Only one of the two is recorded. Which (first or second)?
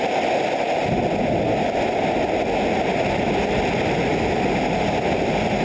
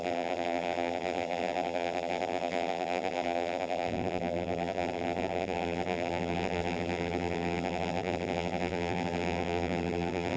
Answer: first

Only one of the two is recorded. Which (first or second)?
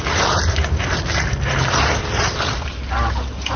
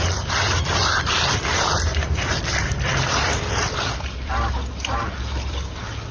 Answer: first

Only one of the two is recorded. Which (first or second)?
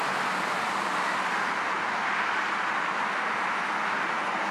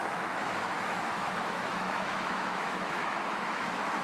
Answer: first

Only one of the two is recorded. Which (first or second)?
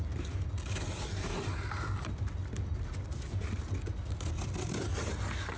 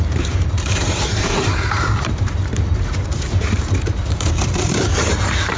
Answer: first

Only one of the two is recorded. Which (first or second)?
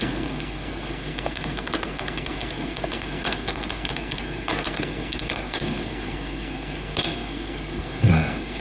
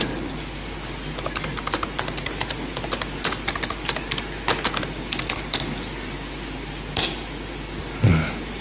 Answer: second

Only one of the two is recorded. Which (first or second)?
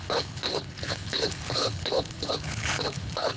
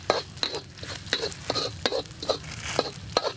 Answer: second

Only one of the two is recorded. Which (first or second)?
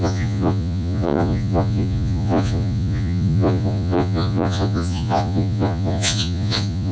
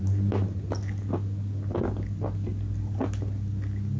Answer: second